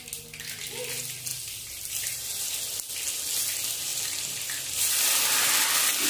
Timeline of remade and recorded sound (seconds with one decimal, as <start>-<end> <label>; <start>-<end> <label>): 0.0-6.1 recorded